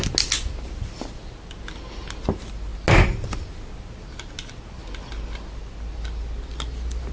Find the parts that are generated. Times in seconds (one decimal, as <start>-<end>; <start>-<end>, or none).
none